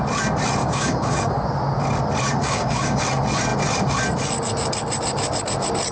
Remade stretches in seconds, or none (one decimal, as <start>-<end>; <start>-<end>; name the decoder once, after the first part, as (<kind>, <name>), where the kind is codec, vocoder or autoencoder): 0.6-1.3 (codec, DAC); 2.4-3.0